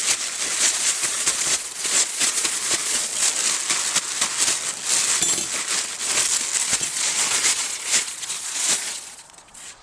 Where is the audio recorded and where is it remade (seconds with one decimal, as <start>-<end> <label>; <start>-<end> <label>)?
0.0-0.6 recorded; 0.6-3.1 remade; 3.1-6.7 recorded; 6.7-9.8 remade